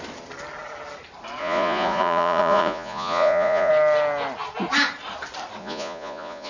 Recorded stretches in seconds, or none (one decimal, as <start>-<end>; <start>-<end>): 0.0-1.4; 3.7-5.6